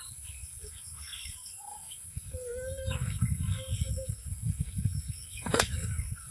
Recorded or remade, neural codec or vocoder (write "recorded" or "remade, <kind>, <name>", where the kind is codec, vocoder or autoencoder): remade, codec, SNAC